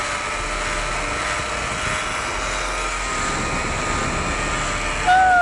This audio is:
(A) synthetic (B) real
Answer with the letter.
B